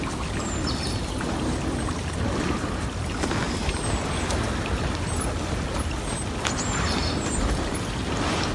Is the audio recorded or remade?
recorded